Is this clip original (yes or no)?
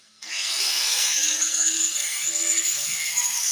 no